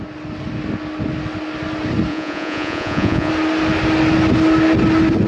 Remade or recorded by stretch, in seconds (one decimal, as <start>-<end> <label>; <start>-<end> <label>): 0.0-2.1 recorded; 2.1-3.3 remade; 3.3-5.3 recorded